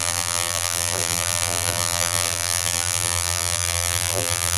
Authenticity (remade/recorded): remade